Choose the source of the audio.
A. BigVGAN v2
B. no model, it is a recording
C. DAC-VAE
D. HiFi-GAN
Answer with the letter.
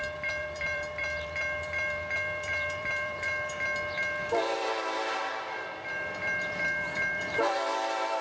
A